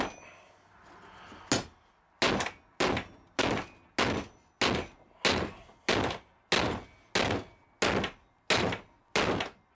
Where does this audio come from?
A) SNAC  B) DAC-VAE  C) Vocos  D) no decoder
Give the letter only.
D